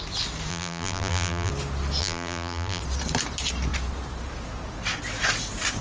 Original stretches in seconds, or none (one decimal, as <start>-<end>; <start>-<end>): 0.0-0.5; 1.5-2.0; 2.8-5.8